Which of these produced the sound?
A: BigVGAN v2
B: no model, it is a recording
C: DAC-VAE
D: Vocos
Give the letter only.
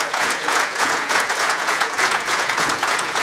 D